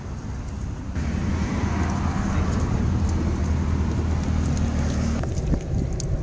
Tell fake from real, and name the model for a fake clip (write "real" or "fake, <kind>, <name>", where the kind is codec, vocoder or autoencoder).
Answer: real